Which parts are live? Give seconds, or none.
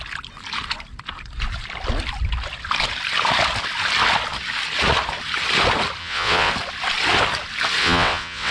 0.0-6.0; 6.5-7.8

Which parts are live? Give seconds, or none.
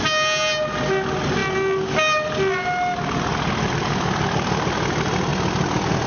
0.0-6.1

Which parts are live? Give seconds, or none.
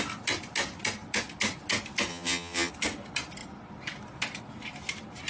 0.0-2.1; 2.7-5.3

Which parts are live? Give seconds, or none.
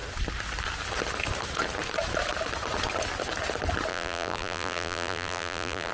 0.0-3.9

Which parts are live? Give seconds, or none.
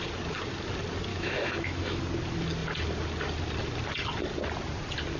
0.0-1.1; 2.0-5.2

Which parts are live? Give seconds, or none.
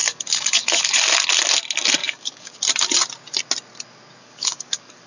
0.8-2.0; 2.6-4.2